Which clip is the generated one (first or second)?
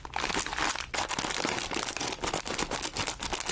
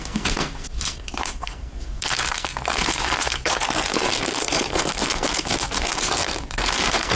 second